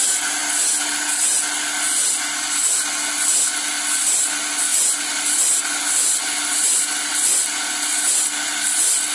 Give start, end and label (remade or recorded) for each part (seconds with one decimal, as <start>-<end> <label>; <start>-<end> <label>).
0.0-9.1 recorded